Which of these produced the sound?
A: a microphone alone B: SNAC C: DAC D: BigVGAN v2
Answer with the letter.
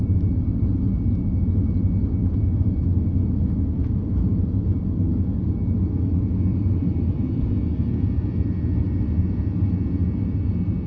A